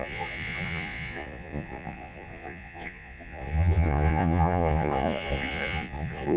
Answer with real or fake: fake